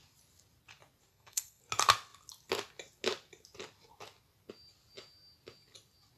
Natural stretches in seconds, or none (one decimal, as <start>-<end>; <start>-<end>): 0.0-1.1; 1.6-6.2